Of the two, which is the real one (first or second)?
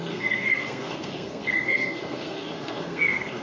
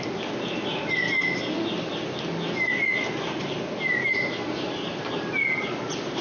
second